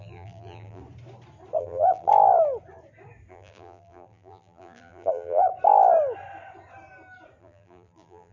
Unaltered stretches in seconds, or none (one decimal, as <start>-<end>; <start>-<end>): 0.8-1.6; 2.1-3.3; 5.5-7.4